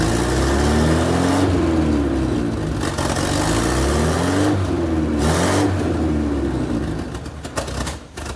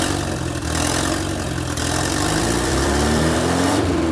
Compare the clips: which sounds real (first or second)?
first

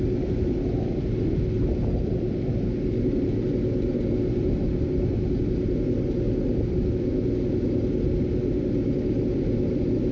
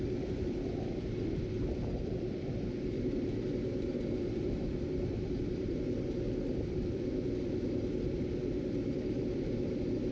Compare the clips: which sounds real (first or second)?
first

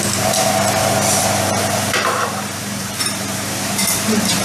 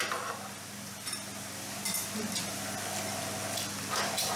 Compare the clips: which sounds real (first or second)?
second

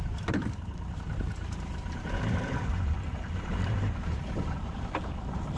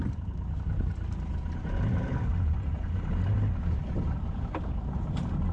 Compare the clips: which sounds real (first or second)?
second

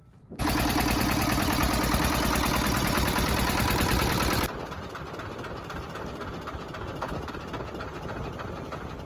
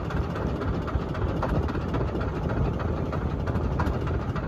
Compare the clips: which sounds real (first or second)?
first